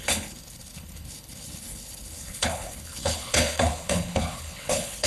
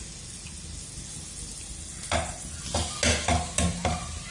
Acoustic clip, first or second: second